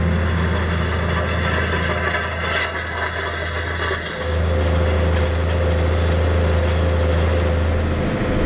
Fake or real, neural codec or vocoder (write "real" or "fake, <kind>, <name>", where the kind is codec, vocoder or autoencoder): real